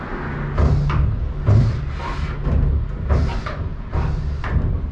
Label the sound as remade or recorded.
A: recorded